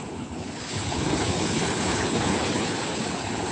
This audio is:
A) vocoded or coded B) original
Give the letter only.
A